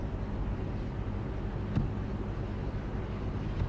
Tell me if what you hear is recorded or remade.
recorded